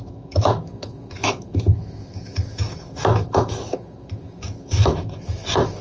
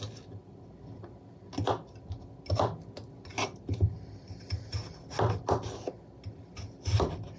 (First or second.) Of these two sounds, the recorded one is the second